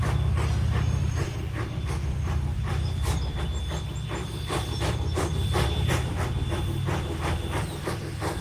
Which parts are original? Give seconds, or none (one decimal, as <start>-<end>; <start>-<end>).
0.0-1.0; 1.7-2.1; 3.4-4.2; 5.9-8.4